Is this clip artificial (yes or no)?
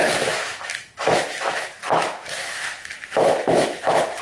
yes